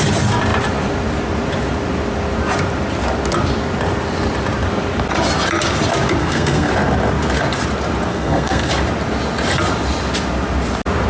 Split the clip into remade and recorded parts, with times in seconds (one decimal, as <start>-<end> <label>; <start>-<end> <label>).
0.0-6.2 recorded; 6.2-6.7 remade; 6.7-8.1 recorded; 8.1-8.7 remade; 8.7-11.1 recorded